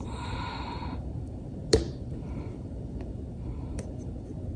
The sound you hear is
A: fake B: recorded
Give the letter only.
A